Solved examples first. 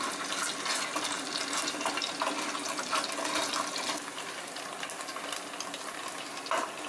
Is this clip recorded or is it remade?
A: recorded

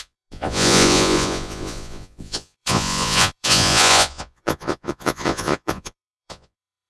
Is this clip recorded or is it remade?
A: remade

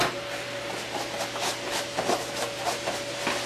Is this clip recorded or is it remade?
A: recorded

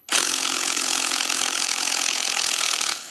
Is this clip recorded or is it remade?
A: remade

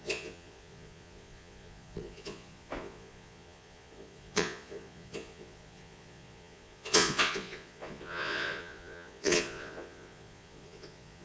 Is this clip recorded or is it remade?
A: remade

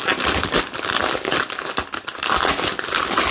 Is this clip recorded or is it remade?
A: recorded